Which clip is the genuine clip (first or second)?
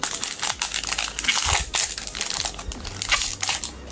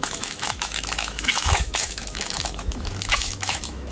first